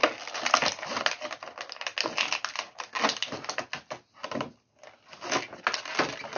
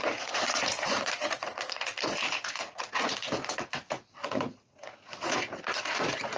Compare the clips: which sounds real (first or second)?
first